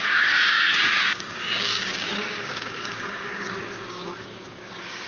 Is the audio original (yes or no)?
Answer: no